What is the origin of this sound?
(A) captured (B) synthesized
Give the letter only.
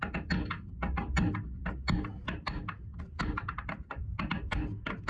A